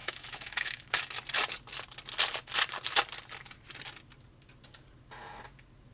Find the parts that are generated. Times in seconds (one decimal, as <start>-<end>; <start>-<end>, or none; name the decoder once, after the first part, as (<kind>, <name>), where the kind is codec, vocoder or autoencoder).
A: 0.0-1.1 (autoencoder, DAC-VAE)